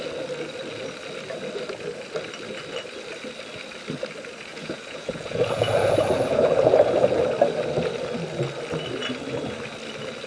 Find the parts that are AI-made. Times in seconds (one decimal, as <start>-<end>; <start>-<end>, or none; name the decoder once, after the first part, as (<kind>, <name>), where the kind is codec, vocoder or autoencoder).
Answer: 4.5-7.2 (vocoder, Vocos)